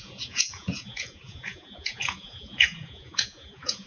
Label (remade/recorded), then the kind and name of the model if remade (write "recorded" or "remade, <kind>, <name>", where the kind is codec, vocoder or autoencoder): remade, vocoder, Vocos